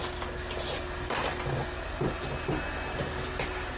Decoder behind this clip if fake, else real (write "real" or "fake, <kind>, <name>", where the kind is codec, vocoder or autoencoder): real